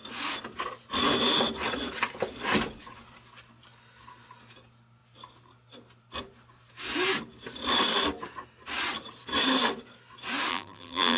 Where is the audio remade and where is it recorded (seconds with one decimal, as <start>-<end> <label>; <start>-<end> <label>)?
0.0-10.5 recorded; 10.5-11.2 remade